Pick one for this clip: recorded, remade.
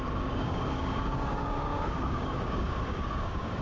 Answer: remade